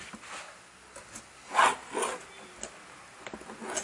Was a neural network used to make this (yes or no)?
no